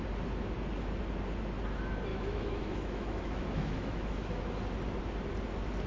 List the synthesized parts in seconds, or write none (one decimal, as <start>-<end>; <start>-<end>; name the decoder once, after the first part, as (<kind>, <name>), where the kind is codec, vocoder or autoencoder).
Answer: 2.1-4.4 (autoencoder, DAC-VAE)